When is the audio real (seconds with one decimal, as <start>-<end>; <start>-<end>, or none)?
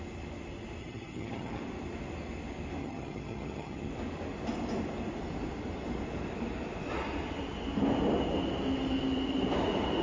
0.0-0.8; 1.6-2.8; 3.9-10.0